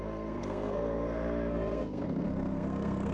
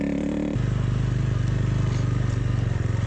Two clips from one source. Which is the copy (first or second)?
first